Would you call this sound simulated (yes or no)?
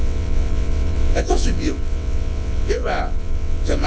yes